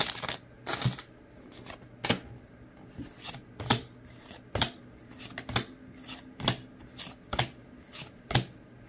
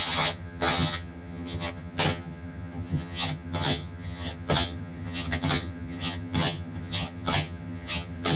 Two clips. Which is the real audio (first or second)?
first